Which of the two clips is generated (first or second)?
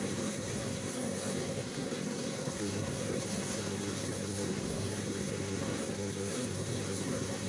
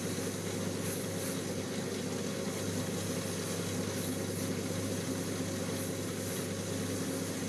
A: first